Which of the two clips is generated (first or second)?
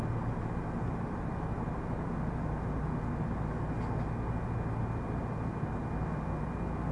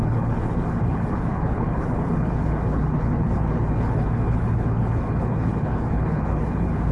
second